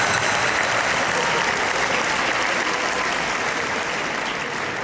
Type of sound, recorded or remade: recorded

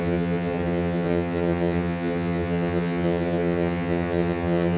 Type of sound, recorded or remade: remade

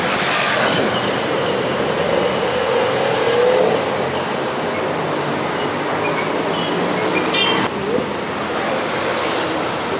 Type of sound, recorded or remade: recorded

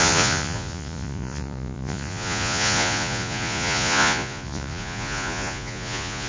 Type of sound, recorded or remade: remade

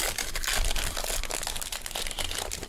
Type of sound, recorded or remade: recorded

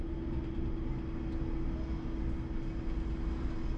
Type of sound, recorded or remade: recorded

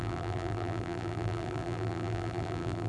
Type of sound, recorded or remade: remade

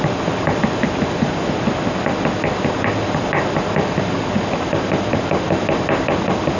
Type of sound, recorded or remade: recorded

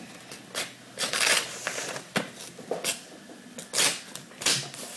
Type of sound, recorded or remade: recorded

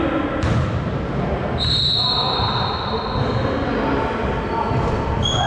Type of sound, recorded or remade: recorded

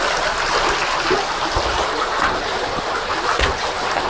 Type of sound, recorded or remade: recorded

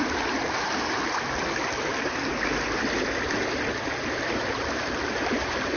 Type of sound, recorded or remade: recorded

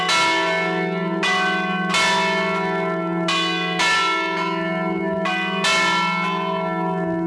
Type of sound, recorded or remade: recorded